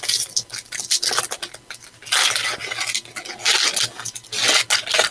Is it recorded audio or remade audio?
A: recorded